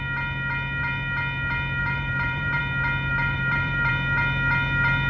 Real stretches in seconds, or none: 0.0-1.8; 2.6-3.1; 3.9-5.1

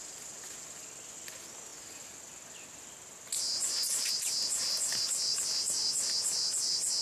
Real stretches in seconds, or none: 0.0-7.0

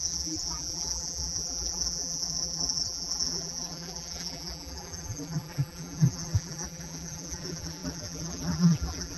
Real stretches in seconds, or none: none

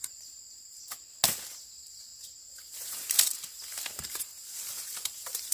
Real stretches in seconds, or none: 0.9-1.5; 3.3-4.2